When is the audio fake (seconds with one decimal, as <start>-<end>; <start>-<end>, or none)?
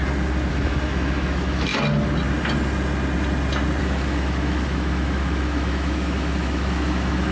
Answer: 0.5-1.7; 3.8-7.3